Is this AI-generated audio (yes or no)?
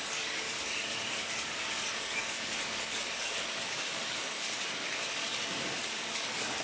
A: yes